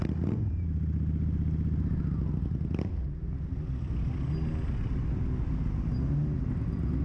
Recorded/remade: recorded